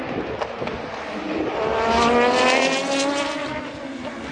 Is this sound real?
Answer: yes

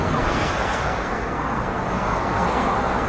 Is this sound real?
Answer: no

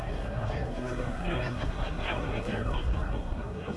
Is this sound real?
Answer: no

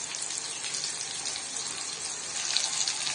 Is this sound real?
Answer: yes